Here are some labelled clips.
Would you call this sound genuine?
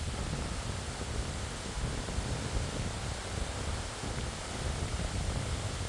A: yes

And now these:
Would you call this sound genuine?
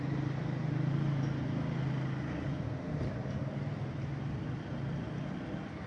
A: yes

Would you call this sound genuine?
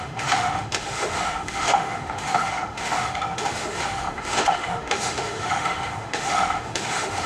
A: no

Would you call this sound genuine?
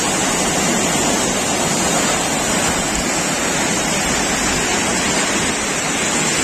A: yes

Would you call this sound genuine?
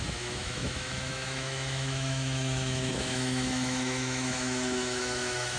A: no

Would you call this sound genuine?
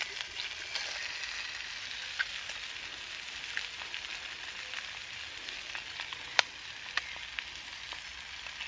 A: yes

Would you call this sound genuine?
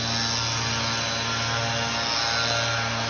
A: yes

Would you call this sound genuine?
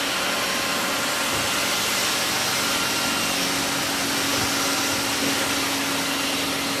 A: yes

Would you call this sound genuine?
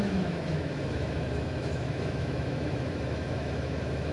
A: no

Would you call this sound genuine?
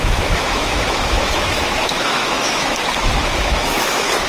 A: no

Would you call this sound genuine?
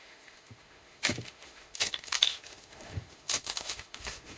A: no